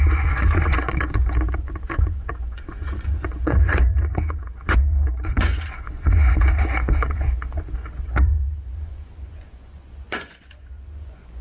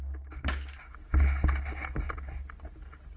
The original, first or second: second